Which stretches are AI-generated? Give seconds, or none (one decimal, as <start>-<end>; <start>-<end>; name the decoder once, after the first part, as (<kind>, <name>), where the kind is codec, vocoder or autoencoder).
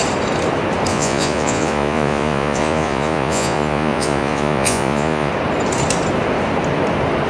0.9-5.3 (vocoder, Vocos)